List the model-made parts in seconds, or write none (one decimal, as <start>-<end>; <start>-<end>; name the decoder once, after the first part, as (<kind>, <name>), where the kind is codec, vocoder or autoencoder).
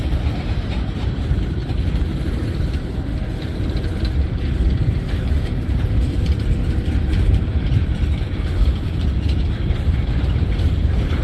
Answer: 0.0-1.6 (vocoder, BigVGAN v2); 2.6-3.1; 3.6-6.6; 8.7-11.2